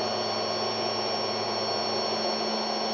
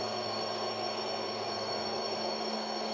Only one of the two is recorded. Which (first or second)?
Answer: first